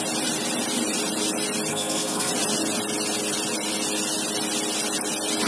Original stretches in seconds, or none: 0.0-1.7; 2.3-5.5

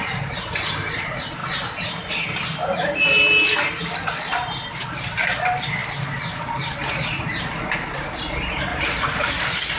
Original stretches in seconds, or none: 0.0-8.7; 9.4-9.8

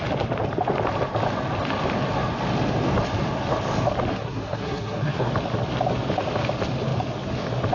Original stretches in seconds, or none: 0.0-4.1; 5.3-7.7

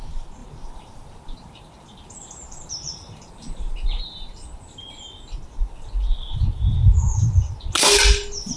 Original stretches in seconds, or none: 0.0-0.4; 4.0-8.6